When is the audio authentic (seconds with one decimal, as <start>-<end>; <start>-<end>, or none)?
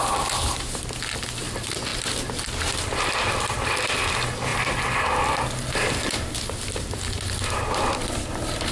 0.0-4.5; 6.3-8.7